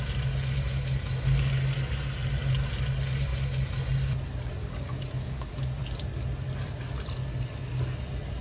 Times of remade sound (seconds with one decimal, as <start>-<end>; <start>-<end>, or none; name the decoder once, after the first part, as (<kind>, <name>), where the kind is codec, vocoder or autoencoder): 4.6-5.8 (codec, DAC)